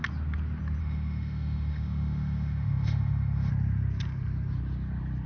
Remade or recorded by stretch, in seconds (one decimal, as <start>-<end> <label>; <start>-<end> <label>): 0.0-0.8 recorded; 0.8-3.5 remade; 3.5-5.3 recorded